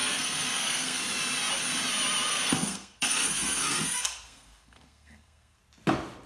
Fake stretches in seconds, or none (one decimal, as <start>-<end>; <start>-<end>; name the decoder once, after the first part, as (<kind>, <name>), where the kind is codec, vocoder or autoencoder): 0.0-1.0 (codec, SNAC); 2.3-5.6